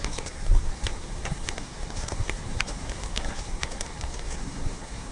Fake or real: fake